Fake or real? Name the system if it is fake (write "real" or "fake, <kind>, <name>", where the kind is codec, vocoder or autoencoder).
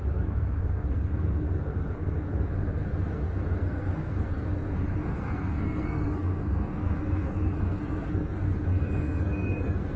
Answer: fake, codec, SNAC